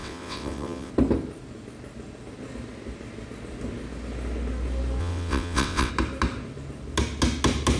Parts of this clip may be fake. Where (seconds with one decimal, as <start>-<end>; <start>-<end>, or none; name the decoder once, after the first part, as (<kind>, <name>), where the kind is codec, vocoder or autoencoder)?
0.0-0.9 (vocoder, WaveNeXt); 5.0-5.9